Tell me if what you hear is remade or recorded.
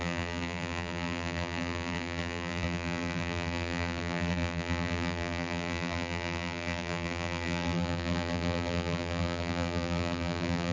remade